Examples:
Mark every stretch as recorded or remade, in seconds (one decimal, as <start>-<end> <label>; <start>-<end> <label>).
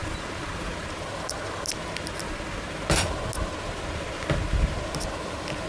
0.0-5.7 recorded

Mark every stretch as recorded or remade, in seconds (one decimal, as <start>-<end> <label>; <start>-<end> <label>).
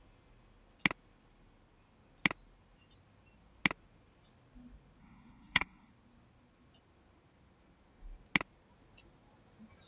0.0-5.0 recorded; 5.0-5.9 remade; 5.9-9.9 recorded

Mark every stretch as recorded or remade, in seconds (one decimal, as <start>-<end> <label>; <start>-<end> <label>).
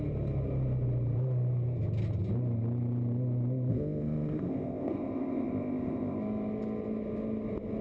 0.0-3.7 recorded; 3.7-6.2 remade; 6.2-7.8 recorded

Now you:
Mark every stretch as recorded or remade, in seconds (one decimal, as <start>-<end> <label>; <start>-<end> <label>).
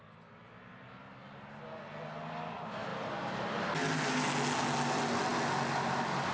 0.0-6.3 recorded